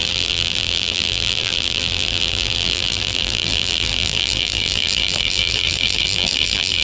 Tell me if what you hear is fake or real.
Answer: fake